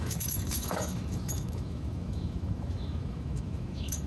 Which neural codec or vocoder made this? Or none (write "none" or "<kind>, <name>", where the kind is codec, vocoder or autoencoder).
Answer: autoencoder, DAC-VAE